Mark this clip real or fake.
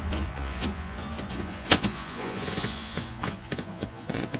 fake